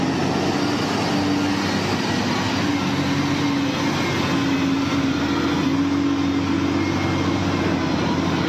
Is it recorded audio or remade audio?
recorded